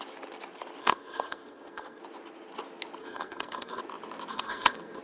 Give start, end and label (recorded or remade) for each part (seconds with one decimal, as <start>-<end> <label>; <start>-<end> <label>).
0.0-0.8 recorded; 0.8-2.0 remade; 2.0-3.0 recorded; 3.0-3.8 remade; 3.8-4.3 recorded; 4.3-5.0 remade